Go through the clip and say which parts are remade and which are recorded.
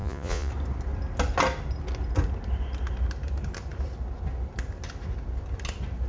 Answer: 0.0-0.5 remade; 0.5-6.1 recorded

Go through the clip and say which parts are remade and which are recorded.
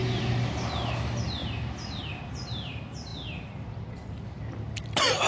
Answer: 0.0-5.3 recorded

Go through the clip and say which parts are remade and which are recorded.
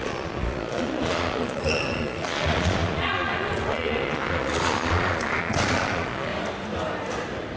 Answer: 0.0-6.3 remade; 6.3-7.6 recorded